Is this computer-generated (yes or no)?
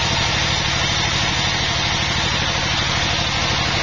no